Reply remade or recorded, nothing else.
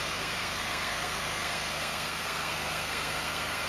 remade